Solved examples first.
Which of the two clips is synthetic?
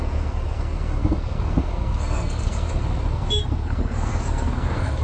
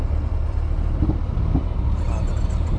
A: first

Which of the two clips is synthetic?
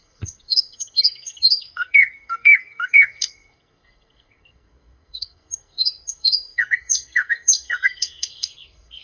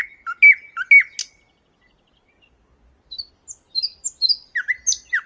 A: first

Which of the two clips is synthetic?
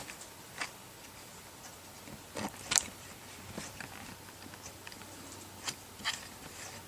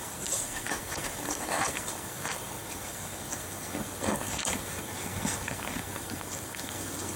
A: second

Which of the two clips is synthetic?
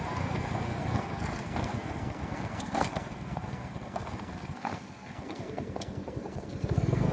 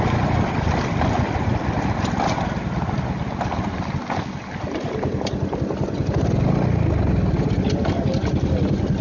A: first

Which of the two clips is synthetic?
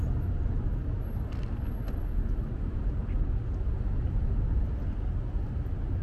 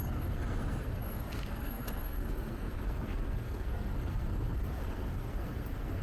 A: second